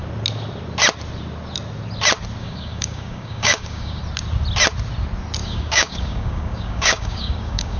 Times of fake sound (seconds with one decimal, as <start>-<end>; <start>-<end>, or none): 2.4-4.0; 5.4-7.8